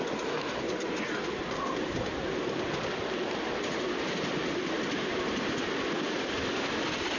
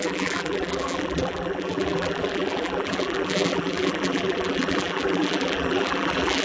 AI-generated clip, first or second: second